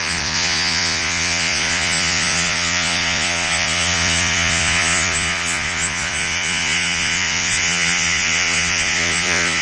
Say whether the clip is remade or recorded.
remade